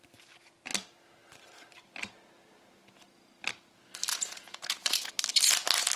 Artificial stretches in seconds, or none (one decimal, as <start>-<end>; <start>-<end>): 4.1-5.1